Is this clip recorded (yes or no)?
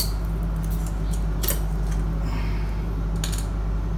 yes